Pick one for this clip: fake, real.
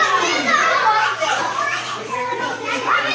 fake